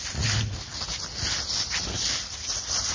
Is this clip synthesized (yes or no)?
no